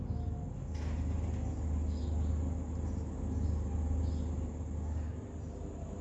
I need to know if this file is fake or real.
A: real